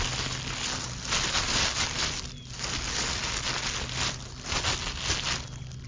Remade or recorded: recorded